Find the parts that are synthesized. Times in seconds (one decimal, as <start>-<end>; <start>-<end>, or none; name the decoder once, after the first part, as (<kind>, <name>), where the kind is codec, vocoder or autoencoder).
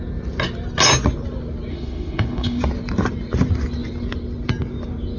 1.7-2.6 (autoencoder, DAC-VAE)